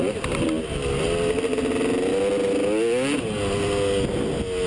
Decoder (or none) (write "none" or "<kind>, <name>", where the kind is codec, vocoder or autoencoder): none